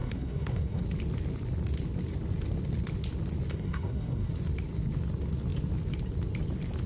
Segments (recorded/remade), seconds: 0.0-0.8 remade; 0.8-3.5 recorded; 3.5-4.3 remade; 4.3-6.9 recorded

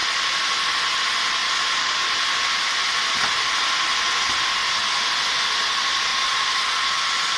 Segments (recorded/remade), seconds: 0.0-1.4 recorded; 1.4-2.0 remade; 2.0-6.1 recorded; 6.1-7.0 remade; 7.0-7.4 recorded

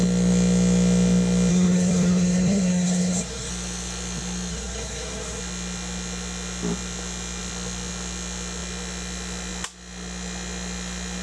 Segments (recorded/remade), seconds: 0.0-1.5 recorded; 1.5-3.5 remade; 3.5-4.5 recorded; 4.5-5.4 remade; 5.4-11.2 recorded

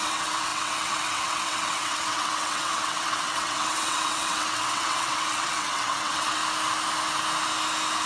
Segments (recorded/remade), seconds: 0.0-6.4 remade; 6.4-8.1 recorded